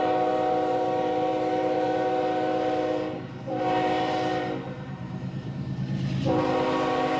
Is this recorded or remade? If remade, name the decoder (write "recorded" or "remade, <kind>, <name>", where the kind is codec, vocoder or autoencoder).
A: remade, vocoder, BigVGAN v2